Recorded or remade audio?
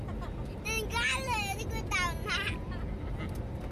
recorded